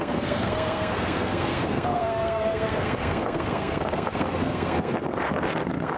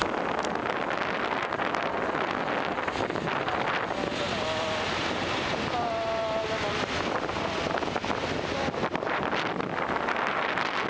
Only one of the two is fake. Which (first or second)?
first